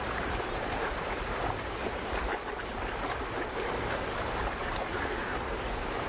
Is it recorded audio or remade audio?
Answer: remade